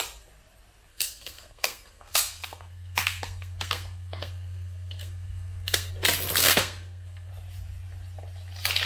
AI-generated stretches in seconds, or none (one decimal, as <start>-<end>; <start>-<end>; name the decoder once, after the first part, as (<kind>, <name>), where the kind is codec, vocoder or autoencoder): 0.9-5.9 (codec, SNAC); 6.4-7.3